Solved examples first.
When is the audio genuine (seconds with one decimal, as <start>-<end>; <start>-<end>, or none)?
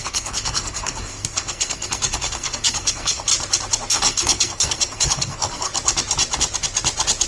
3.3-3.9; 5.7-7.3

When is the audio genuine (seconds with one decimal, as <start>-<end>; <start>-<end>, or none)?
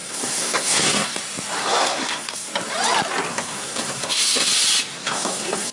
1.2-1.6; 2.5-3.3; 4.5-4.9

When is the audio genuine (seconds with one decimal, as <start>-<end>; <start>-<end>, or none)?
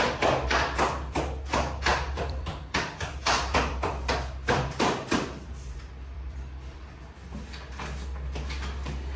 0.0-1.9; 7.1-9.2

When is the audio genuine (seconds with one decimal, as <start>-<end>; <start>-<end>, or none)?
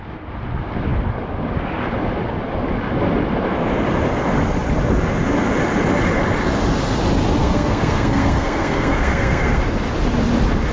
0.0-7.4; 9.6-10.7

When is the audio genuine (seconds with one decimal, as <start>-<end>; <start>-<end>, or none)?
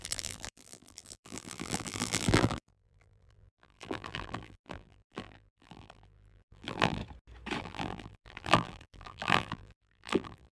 7.0-7.6